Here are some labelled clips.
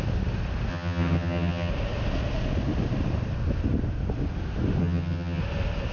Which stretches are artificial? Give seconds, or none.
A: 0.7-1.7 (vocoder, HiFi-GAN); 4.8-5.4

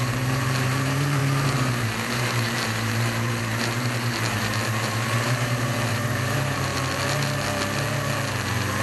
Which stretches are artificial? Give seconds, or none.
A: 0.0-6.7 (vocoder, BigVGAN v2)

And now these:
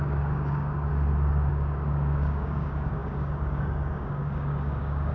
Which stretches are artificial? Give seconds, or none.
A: 0.0-0.9 (codec, DAC); 1.5-5.1